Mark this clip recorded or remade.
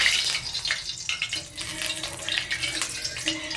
recorded